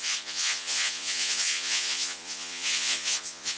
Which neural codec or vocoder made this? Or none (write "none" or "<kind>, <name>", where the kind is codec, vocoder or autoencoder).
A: vocoder, Vocos